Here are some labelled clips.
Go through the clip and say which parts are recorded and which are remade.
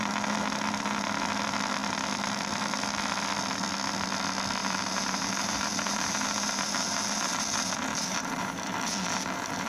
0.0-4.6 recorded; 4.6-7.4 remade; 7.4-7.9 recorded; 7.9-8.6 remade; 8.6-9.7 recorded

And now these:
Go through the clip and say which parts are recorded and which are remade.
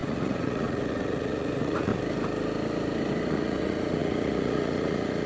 0.0-1.9 remade; 1.9-3.3 recorded; 3.3-5.3 remade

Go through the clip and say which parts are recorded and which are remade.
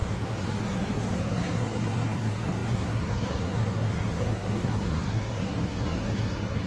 0.0-6.7 remade